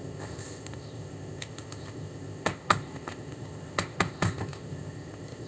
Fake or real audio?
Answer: fake